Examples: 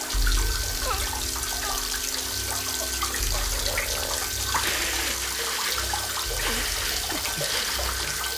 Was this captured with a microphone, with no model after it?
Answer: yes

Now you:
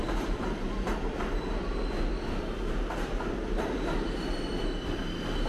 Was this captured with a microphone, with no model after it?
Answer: yes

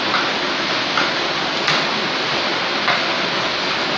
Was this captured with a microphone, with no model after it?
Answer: yes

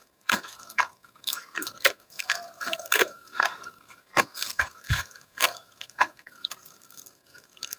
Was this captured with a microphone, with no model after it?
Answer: no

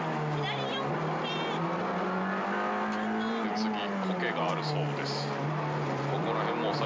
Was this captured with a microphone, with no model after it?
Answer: yes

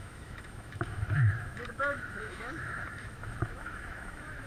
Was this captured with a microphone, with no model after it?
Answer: no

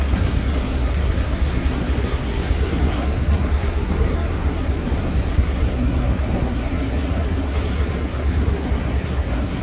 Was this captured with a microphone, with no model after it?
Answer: no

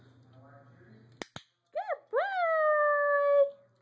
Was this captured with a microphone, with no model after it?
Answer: yes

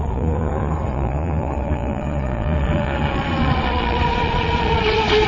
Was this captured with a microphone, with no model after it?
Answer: no